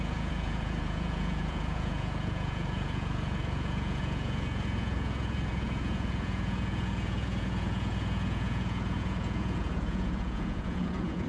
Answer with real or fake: fake